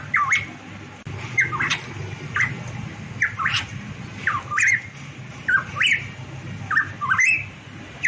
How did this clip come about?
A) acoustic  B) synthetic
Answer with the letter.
A